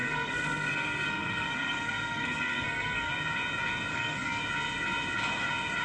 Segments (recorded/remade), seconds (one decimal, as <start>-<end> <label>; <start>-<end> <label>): 0.0-3.1 remade; 3.1-3.9 recorded; 3.9-4.4 remade; 4.4-5.8 recorded